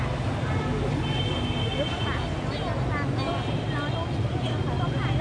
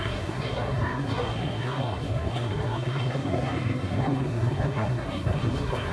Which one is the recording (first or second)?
first